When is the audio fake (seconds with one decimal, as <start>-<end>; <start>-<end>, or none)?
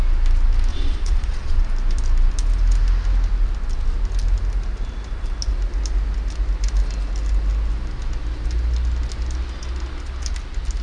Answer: 0.7-1.6